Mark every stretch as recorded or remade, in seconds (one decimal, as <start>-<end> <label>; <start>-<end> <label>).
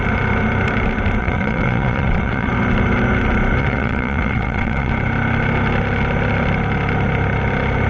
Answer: 0.0-1.2 recorded; 1.2-2.5 remade; 2.5-3.6 recorded; 3.6-4.9 remade; 4.9-7.9 recorded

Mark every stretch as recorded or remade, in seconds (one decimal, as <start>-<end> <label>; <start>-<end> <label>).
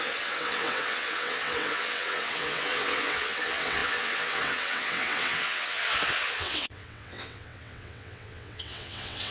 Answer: 0.0-9.3 remade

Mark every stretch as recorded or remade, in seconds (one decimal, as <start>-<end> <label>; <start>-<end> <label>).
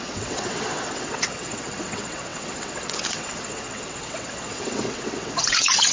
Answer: 0.0-5.9 remade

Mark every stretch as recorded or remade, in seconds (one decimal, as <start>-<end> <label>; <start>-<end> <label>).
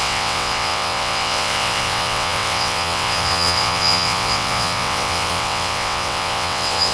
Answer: 0.0-6.9 remade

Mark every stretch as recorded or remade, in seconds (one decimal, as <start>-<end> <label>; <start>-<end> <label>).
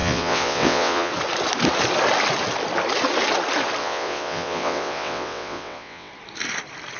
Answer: 0.0-1.1 remade; 1.1-3.8 recorded; 3.8-6.1 remade; 6.1-7.0 recorded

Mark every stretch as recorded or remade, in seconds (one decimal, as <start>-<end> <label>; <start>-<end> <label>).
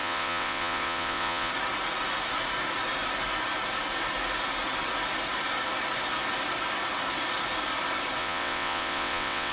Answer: 0.0-1.5 remade; 1.5-8.2 recorded; 8.2-9.5 remade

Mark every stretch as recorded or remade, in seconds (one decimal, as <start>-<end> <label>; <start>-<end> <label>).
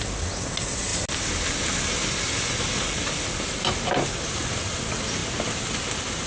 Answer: 0.0-6.3 recorded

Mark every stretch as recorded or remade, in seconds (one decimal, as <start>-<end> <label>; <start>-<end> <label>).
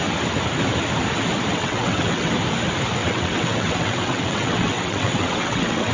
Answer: 0.0-1.5 recorded; 1.5-2.3 remade; 2.3-3.0 recorded; 3.0-5.9 remade